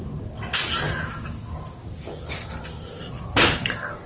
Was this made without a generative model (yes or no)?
yes